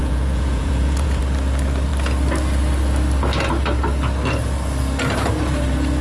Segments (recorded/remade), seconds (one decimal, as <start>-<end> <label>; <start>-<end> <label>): 0.0-1.2 remade; 1.2-6.0 recorded